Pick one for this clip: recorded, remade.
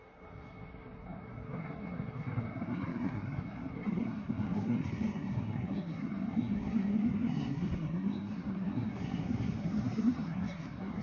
remade